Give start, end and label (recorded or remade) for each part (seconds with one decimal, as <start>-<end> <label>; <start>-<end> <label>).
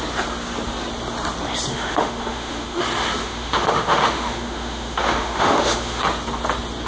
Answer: 0.0-1.7 recorded; 1.7-2.8 remade; 2.8-3.2 recorded; 3.2-6.0 remade; 6.0-6.9 recorded